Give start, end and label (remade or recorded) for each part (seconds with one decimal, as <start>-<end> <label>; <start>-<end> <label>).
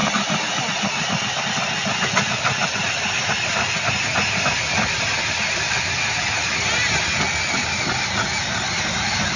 0.0-9.4 recorded